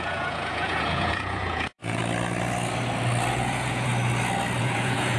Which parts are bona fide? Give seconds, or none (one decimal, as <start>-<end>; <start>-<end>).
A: 2.0-3.3; 3.9-4.6